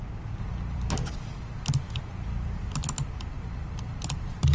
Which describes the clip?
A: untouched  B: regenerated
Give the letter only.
B